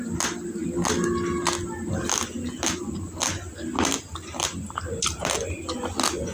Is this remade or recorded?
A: recorded